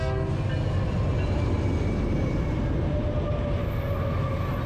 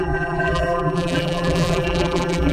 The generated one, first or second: second